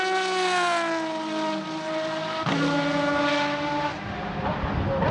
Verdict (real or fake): real